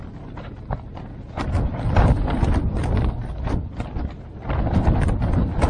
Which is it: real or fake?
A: real